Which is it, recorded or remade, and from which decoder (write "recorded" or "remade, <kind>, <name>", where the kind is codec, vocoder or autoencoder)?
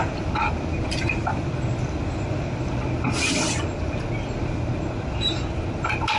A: recorded